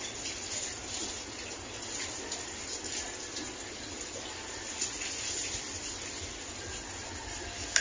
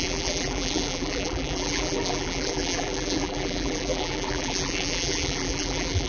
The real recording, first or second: first